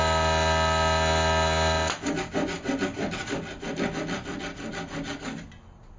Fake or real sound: real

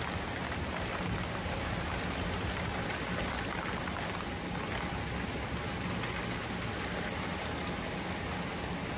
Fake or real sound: real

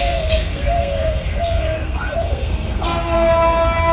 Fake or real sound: fake